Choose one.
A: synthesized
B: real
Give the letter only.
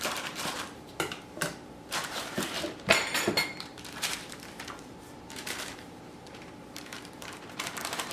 A